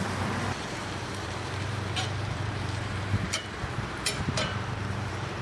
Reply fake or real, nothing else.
fake